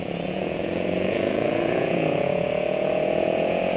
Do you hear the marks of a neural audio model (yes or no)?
yes